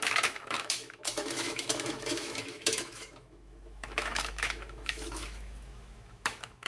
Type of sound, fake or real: fake